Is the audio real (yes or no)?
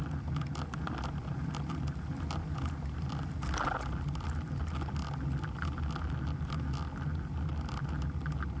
yes